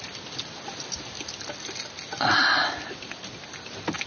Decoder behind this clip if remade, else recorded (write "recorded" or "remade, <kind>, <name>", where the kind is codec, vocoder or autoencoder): recorded